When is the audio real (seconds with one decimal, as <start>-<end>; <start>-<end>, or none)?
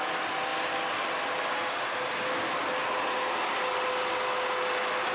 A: 0.0-5.1